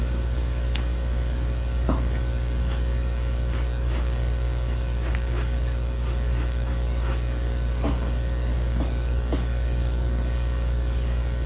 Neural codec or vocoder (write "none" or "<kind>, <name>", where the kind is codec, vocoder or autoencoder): codec, DAC